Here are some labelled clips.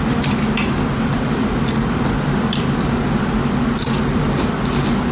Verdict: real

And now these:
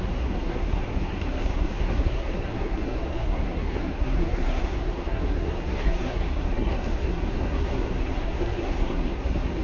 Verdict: fake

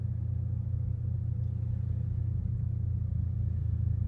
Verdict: real